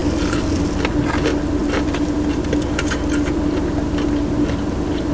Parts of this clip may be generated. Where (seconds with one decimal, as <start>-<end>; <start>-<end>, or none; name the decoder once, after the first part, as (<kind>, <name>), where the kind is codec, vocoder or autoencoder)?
none